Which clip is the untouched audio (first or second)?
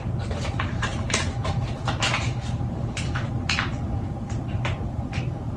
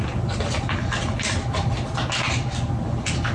second